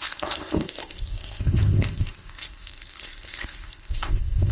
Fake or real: fake